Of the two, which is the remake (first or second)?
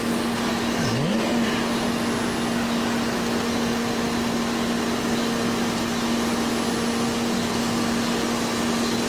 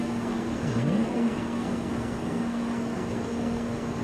second